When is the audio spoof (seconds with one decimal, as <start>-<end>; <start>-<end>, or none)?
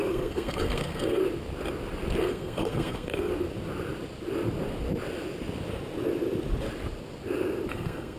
0.0-1.2; 2.2-3.3; 7.7-8.2